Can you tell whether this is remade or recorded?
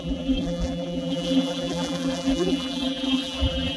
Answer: remade